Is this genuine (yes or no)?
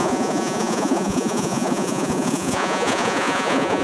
no